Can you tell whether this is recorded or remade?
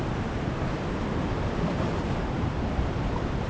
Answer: remade